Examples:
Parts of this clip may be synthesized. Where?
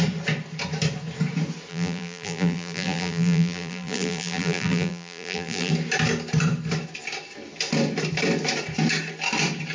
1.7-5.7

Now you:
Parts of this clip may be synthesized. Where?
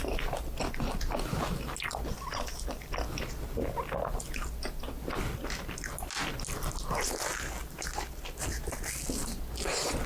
none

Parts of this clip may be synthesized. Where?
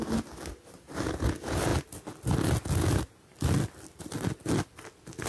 none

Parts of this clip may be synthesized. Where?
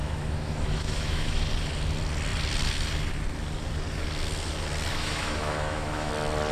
0.0-1.4; 4.9-6.1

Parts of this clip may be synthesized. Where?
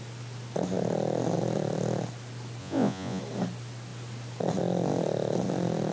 2.6-3.2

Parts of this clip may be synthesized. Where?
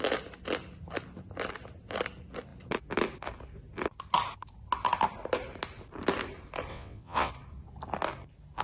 6.7-7.3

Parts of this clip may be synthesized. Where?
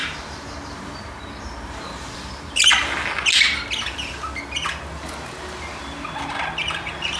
0.0-2.7; 6.6-7.2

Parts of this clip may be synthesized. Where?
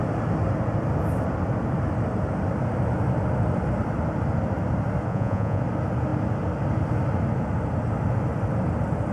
5.1-5.6